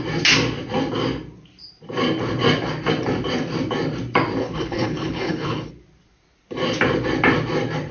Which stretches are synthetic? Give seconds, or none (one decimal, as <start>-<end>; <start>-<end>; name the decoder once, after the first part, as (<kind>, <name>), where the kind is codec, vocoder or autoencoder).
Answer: 4.4-5.7 (codec, HILCodec)